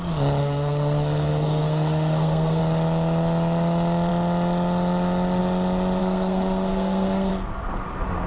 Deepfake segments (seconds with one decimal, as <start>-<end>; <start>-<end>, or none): 0.4-2.6; 6.0-7.3